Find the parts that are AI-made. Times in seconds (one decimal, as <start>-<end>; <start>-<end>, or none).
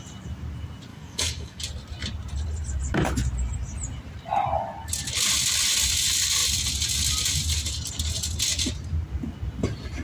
0.9-1.6